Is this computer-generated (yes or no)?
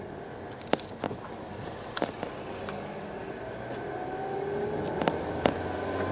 no